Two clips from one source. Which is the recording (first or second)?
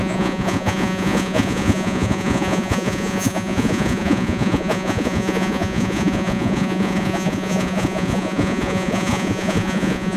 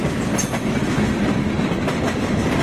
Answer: second